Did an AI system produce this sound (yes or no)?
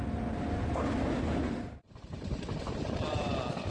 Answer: no